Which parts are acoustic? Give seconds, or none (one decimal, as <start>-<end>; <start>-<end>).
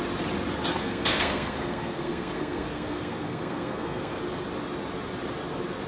0.0-0.7; 4.2-5.9